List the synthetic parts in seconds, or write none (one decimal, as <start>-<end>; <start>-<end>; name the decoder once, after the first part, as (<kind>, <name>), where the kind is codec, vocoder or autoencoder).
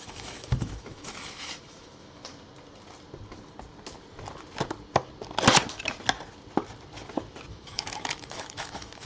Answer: 0.0-2.2 (autoencoder, DAC-VAE); 7.5-9.1